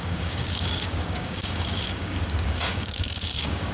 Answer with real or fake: fake